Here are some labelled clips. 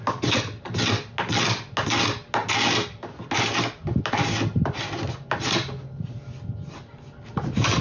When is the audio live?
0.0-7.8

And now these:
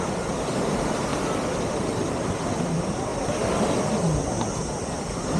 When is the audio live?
1.1-1.7; 3.1-5.4

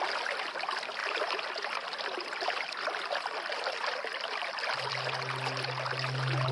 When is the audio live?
0.0-1.0; 4.9-6.5

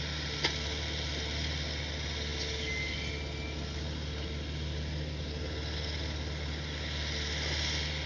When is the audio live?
0.0-8.1

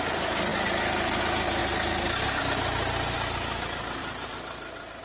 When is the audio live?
0.0-0.5; 1.2-1.6; 2.4-5.0